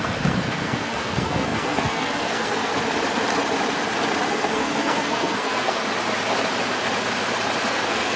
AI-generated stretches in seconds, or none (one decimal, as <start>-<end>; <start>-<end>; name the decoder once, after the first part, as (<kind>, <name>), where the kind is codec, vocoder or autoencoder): 0.0-2.7 (codec, SNAC); 4.3-5.8; 7.7-8.2